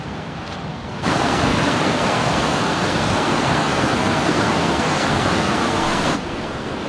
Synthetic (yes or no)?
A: yes